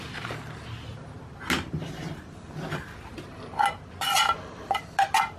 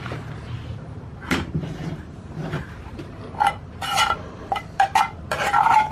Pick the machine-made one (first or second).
second